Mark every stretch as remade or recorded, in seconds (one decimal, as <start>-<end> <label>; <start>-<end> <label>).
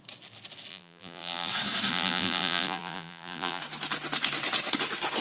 0.0-0.7 recorded; 0.7-1.5 remade; 1.5-1.9 recorded; 1.9-3.6 remade; 3.6-5.2 recorded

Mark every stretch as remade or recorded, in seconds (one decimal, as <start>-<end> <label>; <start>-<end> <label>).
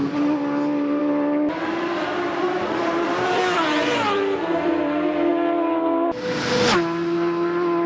0.0-1.0 recorded; 1.0-5.3 remade; 5.3-7.9 recorded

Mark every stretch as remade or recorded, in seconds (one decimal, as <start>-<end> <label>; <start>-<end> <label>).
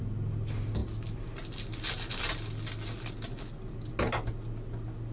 0.0-5.1 recorded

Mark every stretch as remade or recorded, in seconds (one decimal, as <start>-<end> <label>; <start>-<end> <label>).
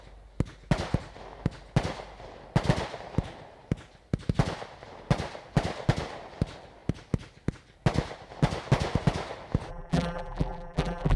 0.0-9.7 recorded; 9.7-11.2 remade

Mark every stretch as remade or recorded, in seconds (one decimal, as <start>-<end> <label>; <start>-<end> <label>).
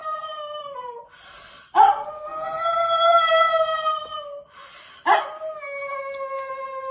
0.0-1.1 remade; 1.1-2.3 recorded; 2.3-3.2 remade; 3.2-6.9 recorded